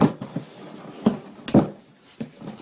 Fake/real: real